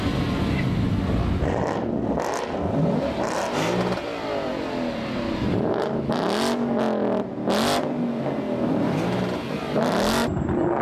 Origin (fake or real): real